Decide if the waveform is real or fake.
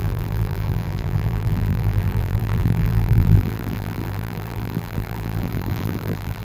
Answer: fake